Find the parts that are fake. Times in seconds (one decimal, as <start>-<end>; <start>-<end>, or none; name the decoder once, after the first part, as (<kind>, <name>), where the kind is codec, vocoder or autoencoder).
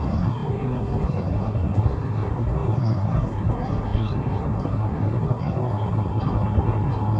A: 0.0-7.2 (codec, SNAC)